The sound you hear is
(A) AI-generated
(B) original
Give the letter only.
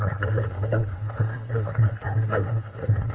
A